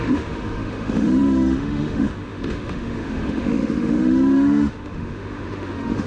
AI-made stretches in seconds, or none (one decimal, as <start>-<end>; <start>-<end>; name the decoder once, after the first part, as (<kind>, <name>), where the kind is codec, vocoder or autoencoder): 0.0-6.1 (autoencoder, DAC-VAE)